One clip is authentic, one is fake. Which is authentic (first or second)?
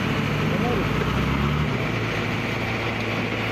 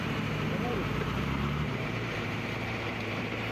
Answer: first